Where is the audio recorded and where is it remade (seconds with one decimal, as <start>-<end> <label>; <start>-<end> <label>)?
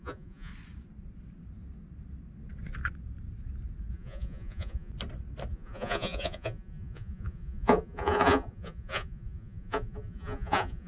0.0-0.5 remade; 0.5-3.9 recorded; 3.9-4.9 remade; 4.9-5.5 recorded; 5.5-10.9 remade